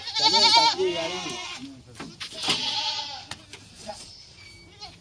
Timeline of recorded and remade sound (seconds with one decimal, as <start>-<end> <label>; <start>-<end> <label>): 0.0-3.8 recorded; 3.8-4.4 remade; 4.4-5.0 recorded